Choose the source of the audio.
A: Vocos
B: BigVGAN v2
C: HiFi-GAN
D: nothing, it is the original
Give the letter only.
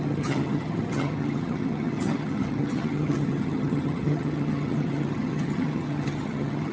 C